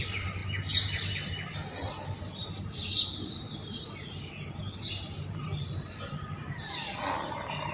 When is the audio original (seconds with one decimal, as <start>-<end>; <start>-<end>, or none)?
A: 0.0-2.4; 5.6-7.7